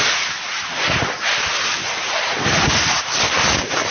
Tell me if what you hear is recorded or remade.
recorded